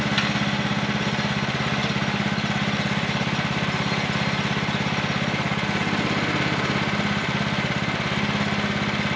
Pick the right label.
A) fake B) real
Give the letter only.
B